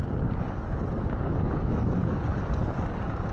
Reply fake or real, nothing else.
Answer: fake